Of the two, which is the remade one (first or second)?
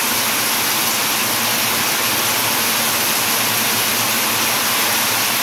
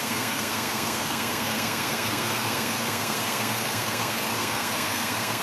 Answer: second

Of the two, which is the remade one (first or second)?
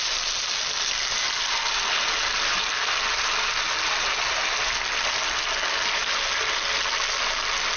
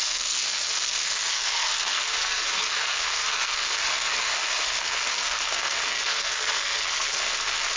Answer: second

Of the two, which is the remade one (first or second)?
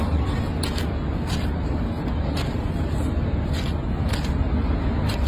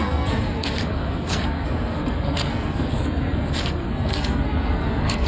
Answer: second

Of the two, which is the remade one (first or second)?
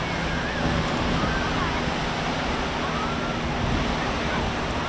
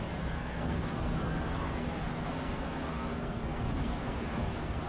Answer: second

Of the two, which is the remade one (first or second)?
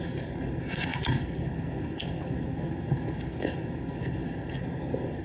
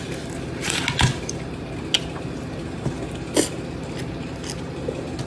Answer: first